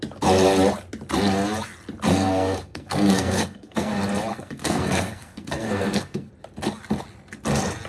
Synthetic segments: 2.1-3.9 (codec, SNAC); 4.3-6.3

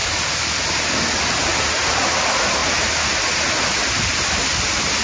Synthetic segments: none

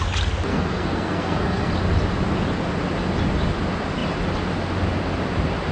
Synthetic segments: 0.5-1.7 (codec, SNAC)

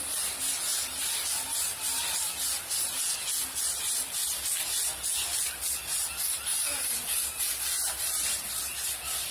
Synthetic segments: 6.5-7.4 (vocoder, BigVGAN v2)

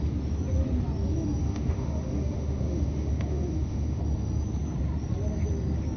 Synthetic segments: 1.4-4.0 (autoencoder, DAC-VAE)

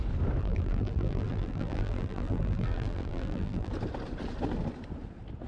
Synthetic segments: 0.4-3.7 (vocoder, BigVGAN v2)